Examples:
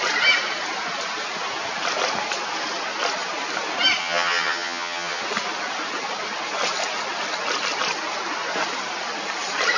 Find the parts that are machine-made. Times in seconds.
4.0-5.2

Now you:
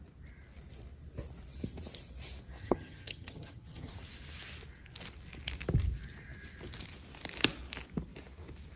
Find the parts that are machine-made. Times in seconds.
2.6-3.9

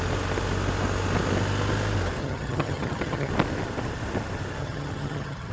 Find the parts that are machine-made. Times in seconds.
2.2-3.3; 4.6-5.5

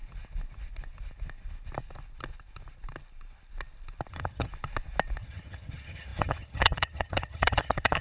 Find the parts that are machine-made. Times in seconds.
4.1-4.5; 5.2-8.0

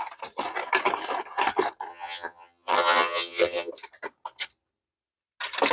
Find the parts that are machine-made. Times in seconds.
1.9-3.7

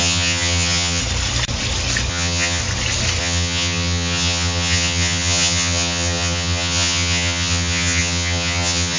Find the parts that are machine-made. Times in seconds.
0.0-1.0; 2.1-2.6; 3.2-9.0

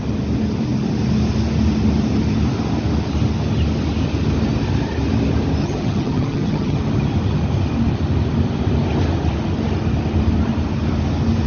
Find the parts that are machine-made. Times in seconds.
5.6-6.8

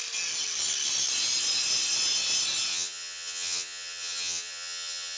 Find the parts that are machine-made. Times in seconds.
2.7-5.2